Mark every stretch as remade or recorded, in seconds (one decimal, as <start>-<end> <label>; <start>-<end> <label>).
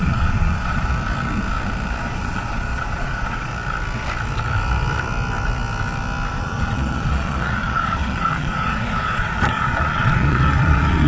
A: 0.0-0.9 remade; 0.9-2.0 recorded; 2.0-3.5 remade; 3.5-6.3 recorded; 6.3-11.1 remade